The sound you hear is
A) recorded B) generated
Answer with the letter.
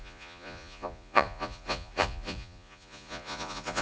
B